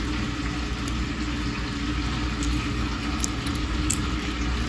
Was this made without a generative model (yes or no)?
yes